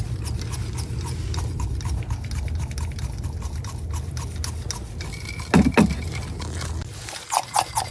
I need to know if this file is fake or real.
real